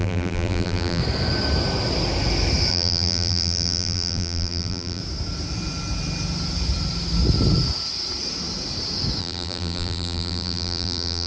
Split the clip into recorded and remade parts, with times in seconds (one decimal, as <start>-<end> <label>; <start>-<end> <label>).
0.0-1.0 remade; 1.0-2.7 recorded; 2.7-5.0 remade; 5.0-9.2 recorded; 9.2-11.3 remade